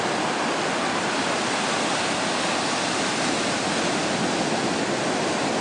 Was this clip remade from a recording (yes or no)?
no